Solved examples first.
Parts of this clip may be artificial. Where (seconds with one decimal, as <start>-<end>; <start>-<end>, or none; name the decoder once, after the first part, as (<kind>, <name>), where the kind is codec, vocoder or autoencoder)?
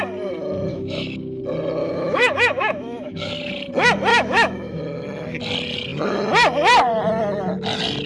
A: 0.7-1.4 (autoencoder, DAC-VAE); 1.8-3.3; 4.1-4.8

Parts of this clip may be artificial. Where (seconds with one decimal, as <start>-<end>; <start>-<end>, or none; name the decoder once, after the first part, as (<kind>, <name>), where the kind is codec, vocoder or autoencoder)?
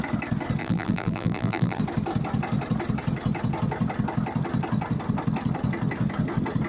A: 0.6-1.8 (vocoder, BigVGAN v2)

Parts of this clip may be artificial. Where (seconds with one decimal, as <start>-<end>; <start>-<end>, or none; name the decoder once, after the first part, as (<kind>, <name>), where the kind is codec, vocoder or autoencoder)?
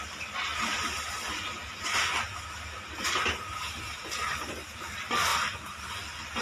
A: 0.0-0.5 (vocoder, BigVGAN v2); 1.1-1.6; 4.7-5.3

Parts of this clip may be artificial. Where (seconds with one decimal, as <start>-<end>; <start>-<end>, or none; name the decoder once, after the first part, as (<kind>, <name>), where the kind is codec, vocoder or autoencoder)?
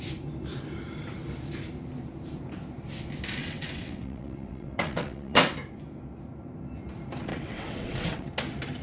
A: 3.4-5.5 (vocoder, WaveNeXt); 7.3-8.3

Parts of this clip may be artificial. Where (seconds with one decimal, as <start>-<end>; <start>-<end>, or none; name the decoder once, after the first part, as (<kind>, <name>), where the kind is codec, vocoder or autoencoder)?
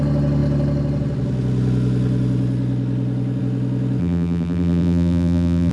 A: 4.0-5.7 (vocoder, BigVGAN v2)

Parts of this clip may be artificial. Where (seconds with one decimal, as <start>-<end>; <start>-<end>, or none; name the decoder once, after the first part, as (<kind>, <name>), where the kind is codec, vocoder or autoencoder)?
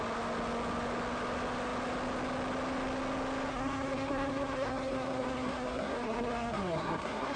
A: 3.5-7.4 (codec, SNAC)